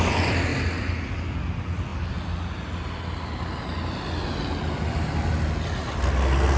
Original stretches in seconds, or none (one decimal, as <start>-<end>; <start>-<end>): 0.0-6.6